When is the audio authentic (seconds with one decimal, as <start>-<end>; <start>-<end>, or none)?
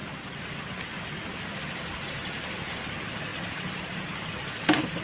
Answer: 0.0-5.0